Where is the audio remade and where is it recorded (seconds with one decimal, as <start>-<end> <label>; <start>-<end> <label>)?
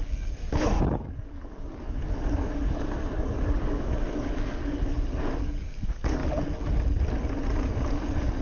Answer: 0.0-6.2 remade; 6.2-8.4 recorded